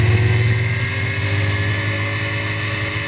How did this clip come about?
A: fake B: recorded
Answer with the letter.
B